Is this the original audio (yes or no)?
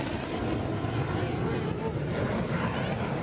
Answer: yes